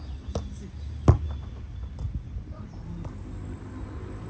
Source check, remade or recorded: recorded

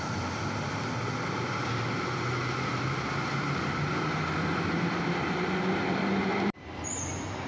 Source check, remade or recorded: recorded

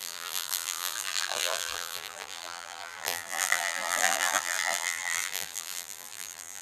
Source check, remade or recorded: remade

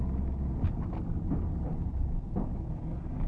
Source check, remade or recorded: recorded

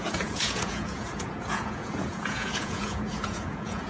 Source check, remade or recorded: remade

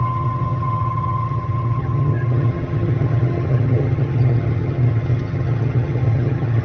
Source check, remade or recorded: remade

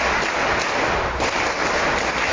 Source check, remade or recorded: recorded